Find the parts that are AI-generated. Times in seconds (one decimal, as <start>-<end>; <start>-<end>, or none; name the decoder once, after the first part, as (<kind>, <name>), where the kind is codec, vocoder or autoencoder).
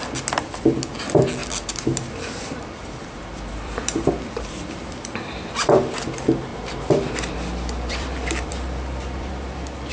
1.4-5.8 (vocoder, BigVGAN v2); 6.5-9.3